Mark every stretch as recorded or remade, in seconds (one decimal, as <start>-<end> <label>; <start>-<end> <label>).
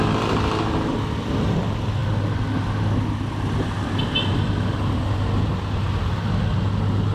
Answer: 0.0-7.1 recorded